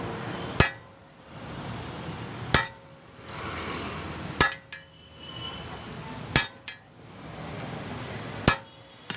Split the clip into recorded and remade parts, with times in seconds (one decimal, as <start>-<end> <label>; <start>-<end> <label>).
0.0-1.0 recorded; 1.0-2.3 remade; 2.3-9.2 recorded